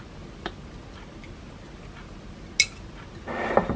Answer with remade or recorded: recorded